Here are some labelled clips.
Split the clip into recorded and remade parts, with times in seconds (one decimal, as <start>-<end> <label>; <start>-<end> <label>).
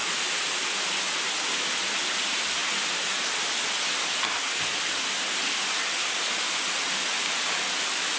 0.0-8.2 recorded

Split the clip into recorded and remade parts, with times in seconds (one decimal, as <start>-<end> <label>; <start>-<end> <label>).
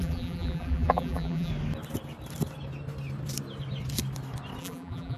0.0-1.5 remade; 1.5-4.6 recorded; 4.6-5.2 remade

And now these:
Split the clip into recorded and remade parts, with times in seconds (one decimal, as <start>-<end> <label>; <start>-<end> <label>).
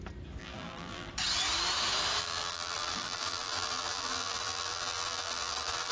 0.0-0.4 recorded; 0.4-1.1 remade; 1.1-2.2 recorded; 2.2-5.9 remade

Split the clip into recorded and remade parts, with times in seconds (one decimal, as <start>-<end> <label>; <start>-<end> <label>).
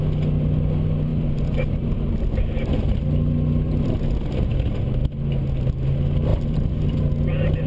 0.0-1.1 recorded; 1.1-3.0 remade; 3.0-6.3 recorded; 6.3-7.0 remade; 7.0-7.7 recorded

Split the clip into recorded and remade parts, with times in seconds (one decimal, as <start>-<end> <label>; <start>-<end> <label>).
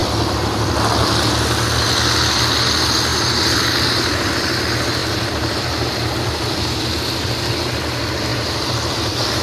0.0-0.7 remade; 0.7-3.1 recorded; 3.1-4.5 remade; 4.5-5.0 recorded; 5.0-6.8 remade; 6.8-9.4 recorded